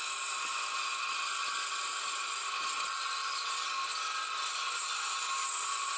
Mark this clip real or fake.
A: real